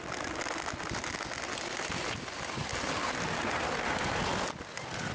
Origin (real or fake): real